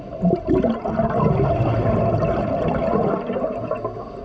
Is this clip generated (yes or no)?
no